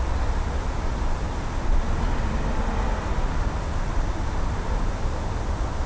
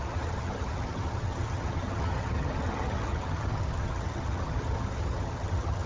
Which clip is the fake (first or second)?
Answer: second